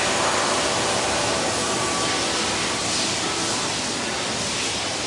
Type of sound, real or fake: real